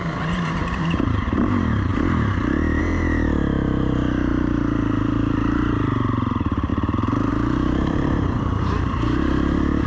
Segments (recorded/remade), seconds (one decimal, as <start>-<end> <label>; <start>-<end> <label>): 0.0-1.9 remade; 1.9-2.8 recorded; 2.8-6.7 remade; 6.7-7.3 recorded; 7.3-9.9 remade